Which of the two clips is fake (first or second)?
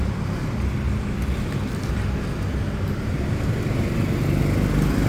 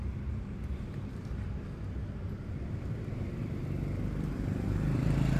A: second